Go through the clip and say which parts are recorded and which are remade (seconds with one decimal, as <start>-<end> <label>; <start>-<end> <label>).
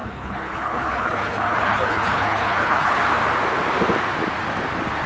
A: 0.0-3.0 remade; 3.0-5.1 recorded